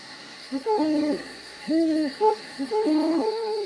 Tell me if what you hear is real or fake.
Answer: fake